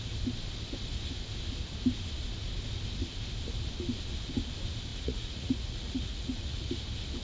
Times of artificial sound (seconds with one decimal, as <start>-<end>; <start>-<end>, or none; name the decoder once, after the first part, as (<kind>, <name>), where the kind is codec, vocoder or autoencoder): 4.9-6.7 (vocoder, Vocos)